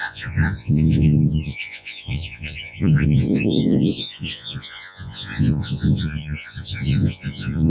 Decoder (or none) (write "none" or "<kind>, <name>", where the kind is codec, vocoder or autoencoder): vocoder, Vocos